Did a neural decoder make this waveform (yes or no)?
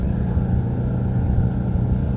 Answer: yes